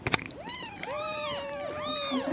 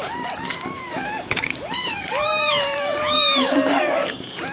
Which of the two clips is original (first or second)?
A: first